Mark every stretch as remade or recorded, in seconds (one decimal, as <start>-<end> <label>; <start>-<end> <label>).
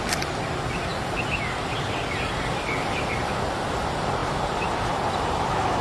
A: 0.0-5.8 recorded